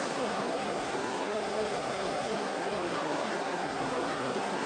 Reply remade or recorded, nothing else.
remade